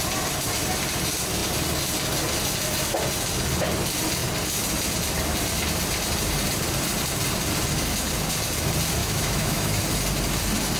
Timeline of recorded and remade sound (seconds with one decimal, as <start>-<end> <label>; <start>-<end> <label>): 0.0-9.0 recorded; 9.0-9.8 remade; 9.8-10.8 recorded

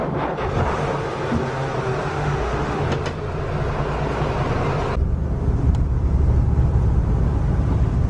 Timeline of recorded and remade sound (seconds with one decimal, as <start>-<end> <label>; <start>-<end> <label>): 0.0-2.1 recorded; 2.1-2.8 remade; 2.8-8.1 recorded

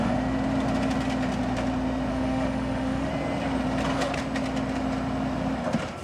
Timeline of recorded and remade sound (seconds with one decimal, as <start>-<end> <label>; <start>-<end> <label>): 0.0-2.1 recorded; 2.1-3.1 remade; 3.1-6.0 recorded

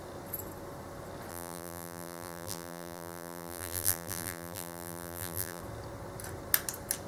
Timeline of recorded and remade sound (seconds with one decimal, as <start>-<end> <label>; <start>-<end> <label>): 0.0-1.3 recorded; 1.3-5.6 remade; 5.6-7.1 recorded